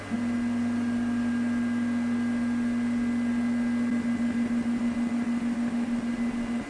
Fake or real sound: real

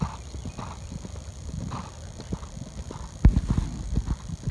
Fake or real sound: real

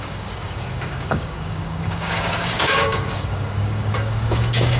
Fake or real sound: fake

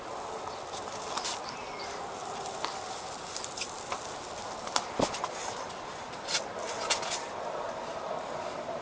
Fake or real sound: real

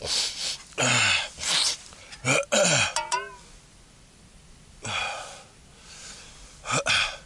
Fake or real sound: real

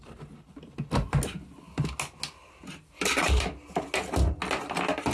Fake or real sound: real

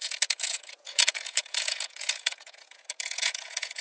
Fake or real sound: fake